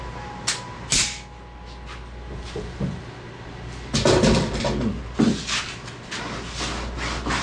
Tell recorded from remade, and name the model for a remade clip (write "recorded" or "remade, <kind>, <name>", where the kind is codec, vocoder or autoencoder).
recorded